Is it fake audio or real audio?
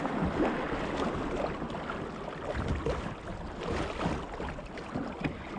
real